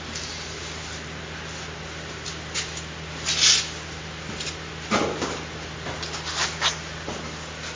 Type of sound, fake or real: real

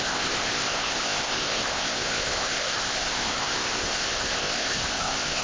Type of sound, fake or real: fake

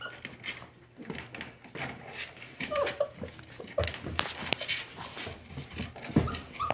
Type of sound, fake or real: real